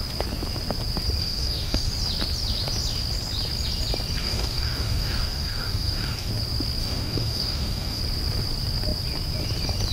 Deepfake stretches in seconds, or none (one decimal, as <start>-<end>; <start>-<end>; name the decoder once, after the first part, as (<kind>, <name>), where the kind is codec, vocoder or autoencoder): 1.2-1.9 (codec, DAC); 4.2-6.3; 6.8-8.0